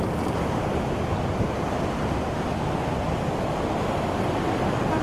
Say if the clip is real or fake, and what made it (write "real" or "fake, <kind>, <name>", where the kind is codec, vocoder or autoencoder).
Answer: real